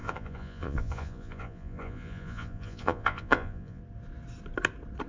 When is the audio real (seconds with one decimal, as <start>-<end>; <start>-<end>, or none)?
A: 3.8-5.1